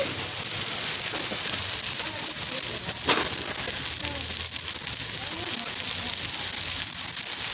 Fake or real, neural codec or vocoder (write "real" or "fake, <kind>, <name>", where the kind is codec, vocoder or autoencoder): real